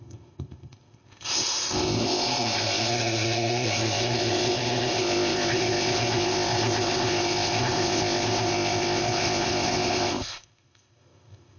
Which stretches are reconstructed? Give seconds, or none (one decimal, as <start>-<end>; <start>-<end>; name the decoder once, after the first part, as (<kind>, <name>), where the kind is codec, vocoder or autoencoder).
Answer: 0.0-11.6 (codec, ZipCodec)